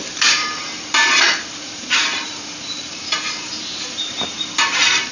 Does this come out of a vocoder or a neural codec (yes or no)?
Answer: yes